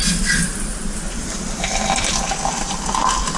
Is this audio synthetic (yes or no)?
no